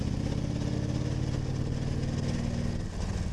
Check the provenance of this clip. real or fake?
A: real